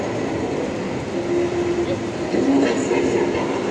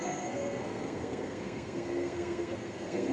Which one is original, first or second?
first